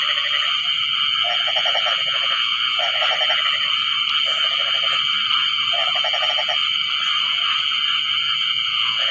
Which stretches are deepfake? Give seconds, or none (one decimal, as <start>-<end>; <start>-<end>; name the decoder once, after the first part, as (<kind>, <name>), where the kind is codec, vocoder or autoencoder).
1.2-3.0 (vocoder, Vocos); 8.3-9.1